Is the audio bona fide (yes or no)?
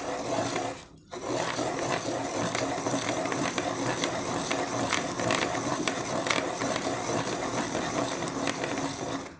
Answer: yes